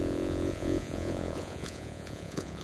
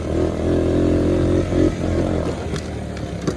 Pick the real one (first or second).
second